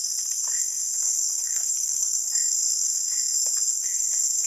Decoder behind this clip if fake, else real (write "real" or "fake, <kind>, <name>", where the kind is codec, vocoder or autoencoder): fake, codec, SNAC